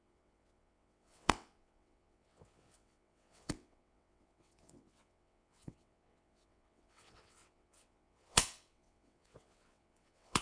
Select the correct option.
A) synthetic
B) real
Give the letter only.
A